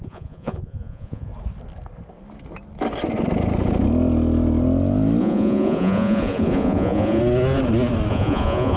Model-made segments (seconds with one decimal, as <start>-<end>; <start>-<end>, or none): 0.0-1.3; 5.2-7.2; 8.1-8.8